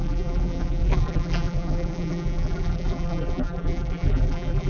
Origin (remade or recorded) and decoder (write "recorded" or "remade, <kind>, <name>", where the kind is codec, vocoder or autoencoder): remade, vocoder, BigVGAN v2